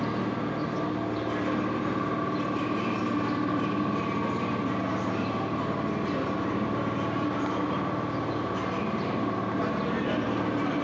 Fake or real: real